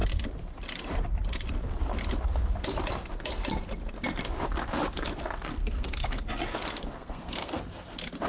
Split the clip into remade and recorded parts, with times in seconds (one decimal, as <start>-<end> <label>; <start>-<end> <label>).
0.0-5.6 recorded; 5.6-6.2 remade; 6.2-6.8 recorded; 6.8-7.6 remade; 7.6-8.3 recorded